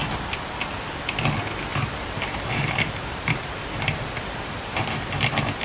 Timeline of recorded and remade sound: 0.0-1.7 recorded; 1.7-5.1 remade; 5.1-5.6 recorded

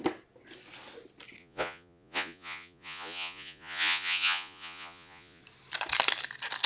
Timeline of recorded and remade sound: 0.0-1.4 recorded; 1.4-5.4 remade; 5.4-6.7 recorded

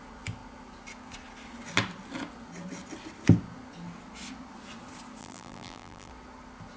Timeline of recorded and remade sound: 0.0-5.2 recorded; 5.2-6.1 remade; 6.1-6.8 recorded